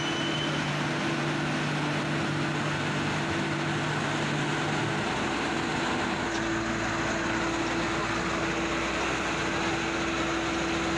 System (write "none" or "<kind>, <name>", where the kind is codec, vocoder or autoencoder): none